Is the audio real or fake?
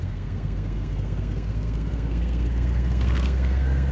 fake